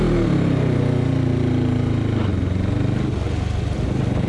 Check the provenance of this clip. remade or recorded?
recorded